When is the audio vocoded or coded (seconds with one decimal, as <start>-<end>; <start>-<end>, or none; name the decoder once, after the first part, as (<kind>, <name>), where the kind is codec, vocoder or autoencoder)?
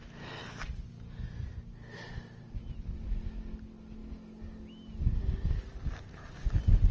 none